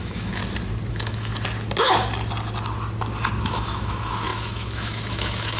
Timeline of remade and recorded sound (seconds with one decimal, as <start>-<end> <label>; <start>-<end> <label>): 0.0-0.4 remade; 0.4-0.9 recorded; 0.9-1.3 remade; 1.3-3.4 recorded; 3.4-5.6 remade